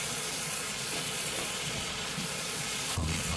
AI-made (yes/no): yes